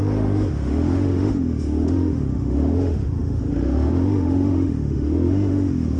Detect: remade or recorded remade